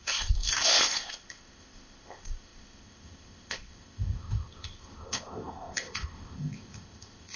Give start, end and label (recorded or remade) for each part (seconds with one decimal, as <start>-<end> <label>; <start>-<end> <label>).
0.0-7.4 remade